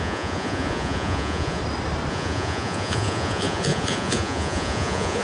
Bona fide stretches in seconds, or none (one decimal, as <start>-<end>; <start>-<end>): 1.6-2.1